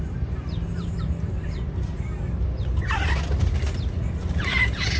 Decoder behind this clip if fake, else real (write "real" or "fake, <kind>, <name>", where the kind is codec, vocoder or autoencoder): real